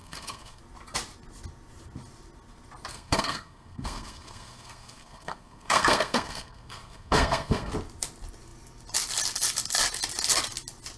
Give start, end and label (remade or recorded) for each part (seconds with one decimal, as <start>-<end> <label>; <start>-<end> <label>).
0.0-0.6 remade; 0.6-2.9 recorded; 2.9-7.7 remade; 7.7-11.0 recorded